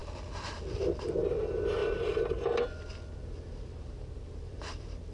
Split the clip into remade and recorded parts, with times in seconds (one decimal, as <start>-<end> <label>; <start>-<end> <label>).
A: 0.0-0.5 remade; 0.5-1.8 recorded; 1.8-5.1 remade